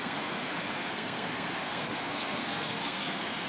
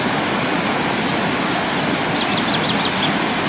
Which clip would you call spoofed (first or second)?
first